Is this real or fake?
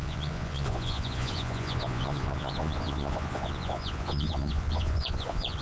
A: fake